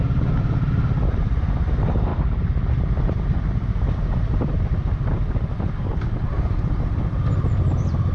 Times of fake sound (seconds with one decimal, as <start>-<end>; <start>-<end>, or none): 0.0-8.1